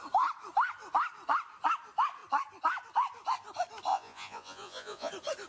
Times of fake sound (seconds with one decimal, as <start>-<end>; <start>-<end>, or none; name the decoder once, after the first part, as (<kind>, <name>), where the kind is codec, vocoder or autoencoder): 3.9-5.1 (vocoder, Vocos)

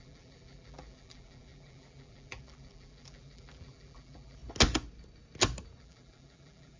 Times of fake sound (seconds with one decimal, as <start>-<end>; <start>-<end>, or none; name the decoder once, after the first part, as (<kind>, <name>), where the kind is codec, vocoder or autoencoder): 0.0-4.4 (vocoder, BigVGAN v2); 5.8-6.8

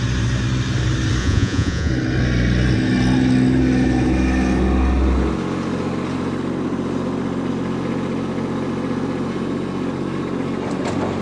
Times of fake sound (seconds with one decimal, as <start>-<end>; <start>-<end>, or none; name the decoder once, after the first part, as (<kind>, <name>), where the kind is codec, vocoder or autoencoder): 1.2-1.9 (vocoder, Vocos)

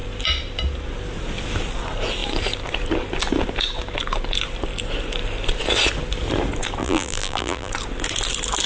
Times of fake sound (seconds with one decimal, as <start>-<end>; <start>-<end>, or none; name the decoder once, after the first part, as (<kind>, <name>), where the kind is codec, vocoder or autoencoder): 6.8-7.7 (vocoder, BigVGAN v2)

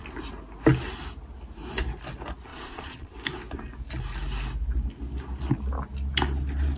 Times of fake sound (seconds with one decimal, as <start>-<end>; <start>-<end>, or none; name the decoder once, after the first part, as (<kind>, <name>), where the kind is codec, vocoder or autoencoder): 2.5-3.1 (vocoder, Vocos)